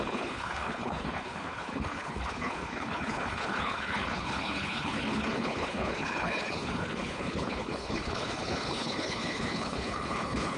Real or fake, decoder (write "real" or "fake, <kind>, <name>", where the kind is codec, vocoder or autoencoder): fake, codec, HILCodec